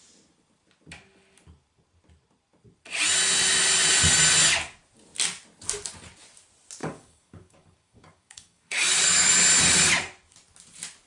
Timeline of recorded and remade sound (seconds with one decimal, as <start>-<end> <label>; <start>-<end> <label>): 0.0-6.8 recorded; 6.8-9.3 remade; 9.3-11.1 recorded